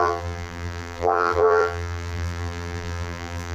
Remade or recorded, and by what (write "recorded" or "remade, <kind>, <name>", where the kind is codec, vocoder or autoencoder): remade, vocoder, BigVGAN v2